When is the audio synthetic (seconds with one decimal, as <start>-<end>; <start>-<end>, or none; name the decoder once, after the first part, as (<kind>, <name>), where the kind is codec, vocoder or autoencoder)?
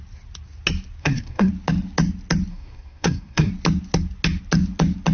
1.0-1.5 (codec, SNAC); 2.5-3.5